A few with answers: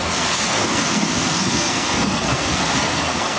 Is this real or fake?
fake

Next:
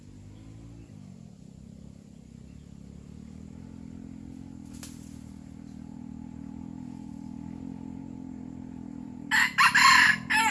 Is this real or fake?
real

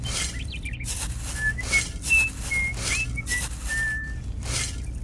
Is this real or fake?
real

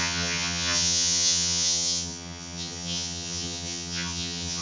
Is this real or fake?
fake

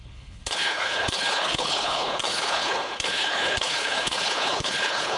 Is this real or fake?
fake